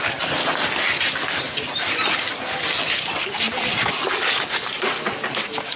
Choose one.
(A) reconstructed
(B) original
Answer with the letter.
B